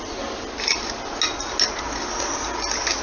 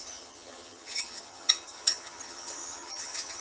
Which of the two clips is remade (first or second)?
second